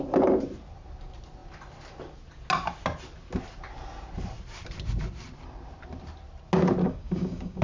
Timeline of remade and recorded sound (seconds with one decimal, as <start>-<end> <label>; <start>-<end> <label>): 0.0-6.8 recorded; 6.8-7.6 remade